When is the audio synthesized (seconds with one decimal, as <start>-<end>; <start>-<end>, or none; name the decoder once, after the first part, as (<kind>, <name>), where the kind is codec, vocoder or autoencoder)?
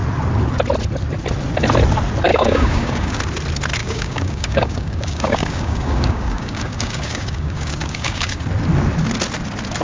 2.3-3.2 (codec, DAC); 3.8-8.4